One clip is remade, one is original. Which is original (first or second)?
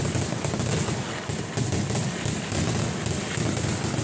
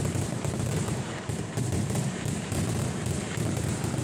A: first